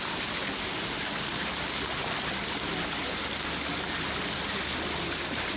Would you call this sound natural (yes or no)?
yes